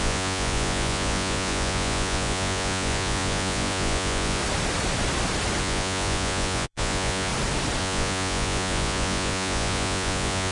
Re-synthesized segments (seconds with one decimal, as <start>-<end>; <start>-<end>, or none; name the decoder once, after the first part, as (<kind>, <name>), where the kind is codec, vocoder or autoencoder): 0.0-4.4 (vocoder, Vocos); 5.6-7.3; 7.8-10.5